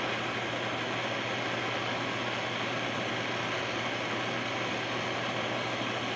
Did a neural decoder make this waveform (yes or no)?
no